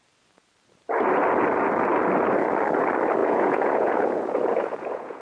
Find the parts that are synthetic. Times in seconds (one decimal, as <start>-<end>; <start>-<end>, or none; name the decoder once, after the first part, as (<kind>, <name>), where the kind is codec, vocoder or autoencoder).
3.2-5.2 (vocoder, Vocos)